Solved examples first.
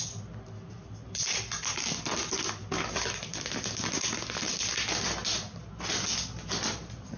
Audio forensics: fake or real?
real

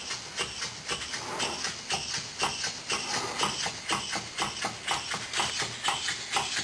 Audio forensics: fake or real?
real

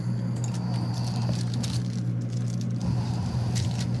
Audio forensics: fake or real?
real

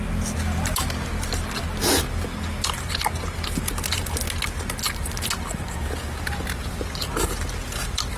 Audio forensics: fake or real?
real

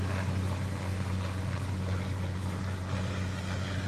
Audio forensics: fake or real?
real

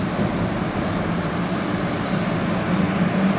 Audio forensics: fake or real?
real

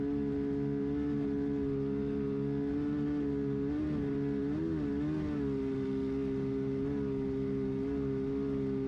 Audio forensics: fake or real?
real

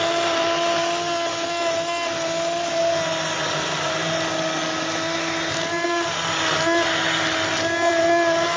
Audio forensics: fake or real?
real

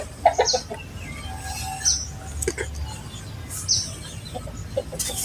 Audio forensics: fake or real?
real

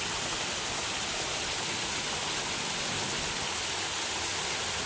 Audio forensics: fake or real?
real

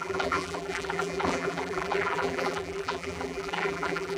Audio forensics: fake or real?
fake